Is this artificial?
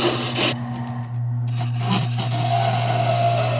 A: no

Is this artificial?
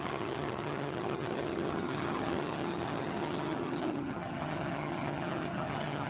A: yes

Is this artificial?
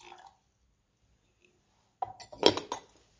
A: no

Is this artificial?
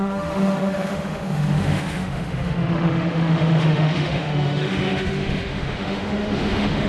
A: yes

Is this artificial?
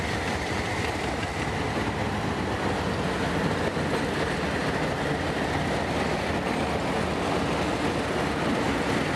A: no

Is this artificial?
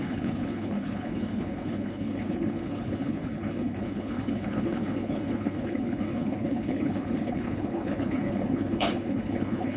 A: yes